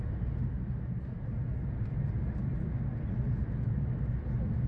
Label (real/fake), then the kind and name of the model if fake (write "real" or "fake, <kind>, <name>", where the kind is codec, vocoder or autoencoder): real